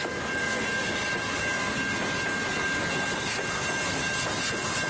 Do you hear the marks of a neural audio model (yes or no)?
no